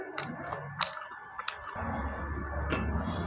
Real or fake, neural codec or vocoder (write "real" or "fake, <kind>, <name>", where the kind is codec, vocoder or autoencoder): real